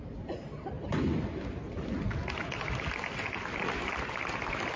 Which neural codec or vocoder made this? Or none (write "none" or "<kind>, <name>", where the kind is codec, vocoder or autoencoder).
none